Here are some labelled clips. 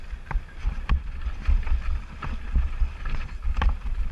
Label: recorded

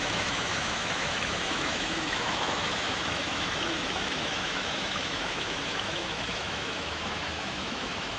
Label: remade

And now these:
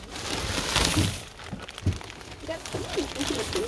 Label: recorded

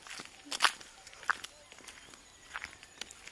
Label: recorded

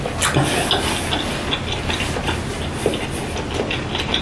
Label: recorded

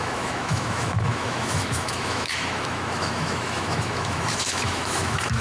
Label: remade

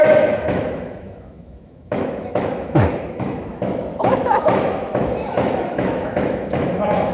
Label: remade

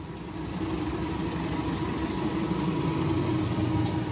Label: recorded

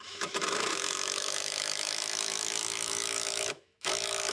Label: remade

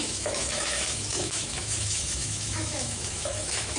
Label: remade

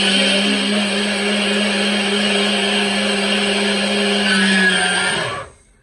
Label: recorded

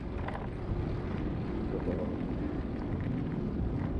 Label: recorded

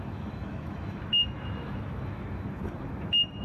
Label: remade